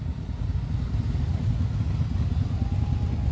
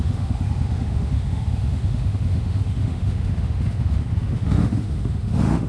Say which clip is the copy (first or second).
second